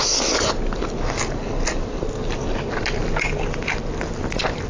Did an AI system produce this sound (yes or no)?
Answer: no